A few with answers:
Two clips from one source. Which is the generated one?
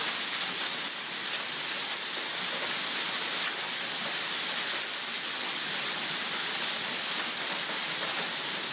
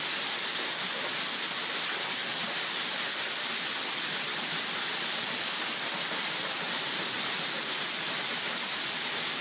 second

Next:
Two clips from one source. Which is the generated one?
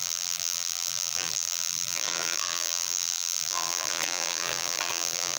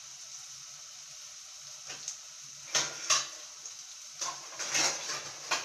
first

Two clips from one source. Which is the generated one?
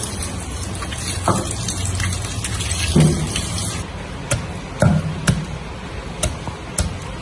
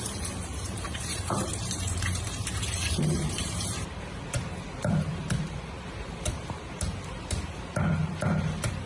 second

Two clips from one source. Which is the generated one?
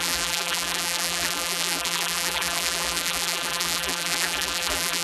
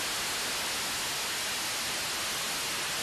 first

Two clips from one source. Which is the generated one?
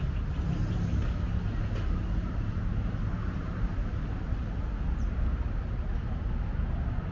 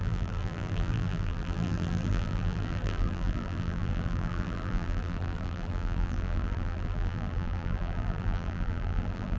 second